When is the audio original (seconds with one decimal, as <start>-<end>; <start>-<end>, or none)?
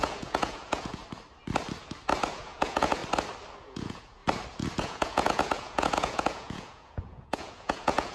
1.0-2.3; 3.0-3.6; 4.2-4.8